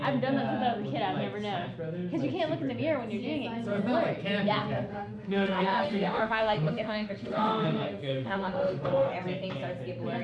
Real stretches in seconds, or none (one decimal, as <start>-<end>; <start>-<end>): 0.0-4.9; 9.1-10.2